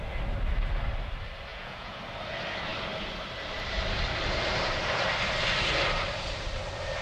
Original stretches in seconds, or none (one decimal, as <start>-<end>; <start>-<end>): 0.0-1.5; 2.0-7.0